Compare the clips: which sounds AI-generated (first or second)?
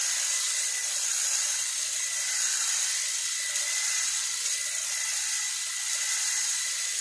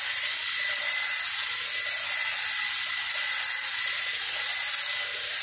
first